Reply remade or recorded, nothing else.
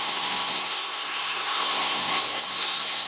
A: remade